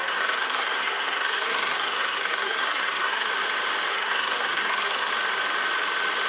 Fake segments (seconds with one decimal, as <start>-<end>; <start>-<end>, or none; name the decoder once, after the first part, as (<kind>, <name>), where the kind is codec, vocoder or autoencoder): 0.0-3.3 (codec, SNAC); 3.9-5.1